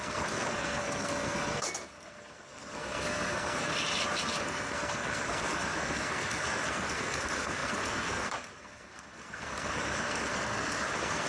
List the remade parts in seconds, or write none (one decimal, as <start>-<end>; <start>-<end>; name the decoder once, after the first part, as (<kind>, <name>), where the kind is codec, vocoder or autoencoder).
0.0-3.7 (codec, SNAC); 4.4-11.3